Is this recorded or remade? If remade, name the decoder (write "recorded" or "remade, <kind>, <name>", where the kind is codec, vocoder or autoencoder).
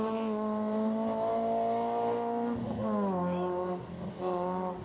recorded